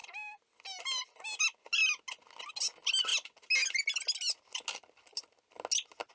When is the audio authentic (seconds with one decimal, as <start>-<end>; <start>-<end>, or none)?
0.0-6.1